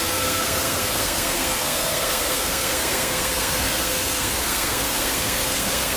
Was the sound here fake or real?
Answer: fake